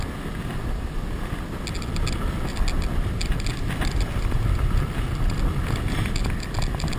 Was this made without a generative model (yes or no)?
yes